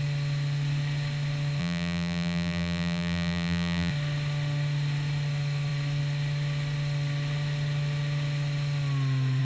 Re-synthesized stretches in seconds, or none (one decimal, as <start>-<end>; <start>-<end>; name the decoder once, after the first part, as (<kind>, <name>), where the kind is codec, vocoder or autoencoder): 1.6-3.9 (vocoder, BigVGAN v2)